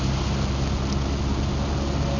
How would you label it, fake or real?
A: real